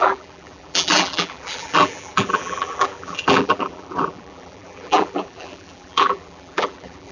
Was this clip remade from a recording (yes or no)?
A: yes